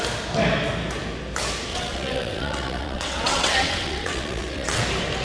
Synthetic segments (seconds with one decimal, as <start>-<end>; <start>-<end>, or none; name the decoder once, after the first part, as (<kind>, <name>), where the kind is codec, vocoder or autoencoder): 1.7-4.8 (vocoder, WaveNeXt)